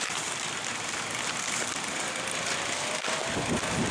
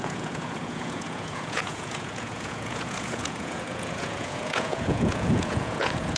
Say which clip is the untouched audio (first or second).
first